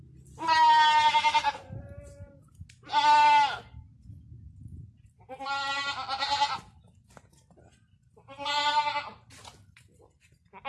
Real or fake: real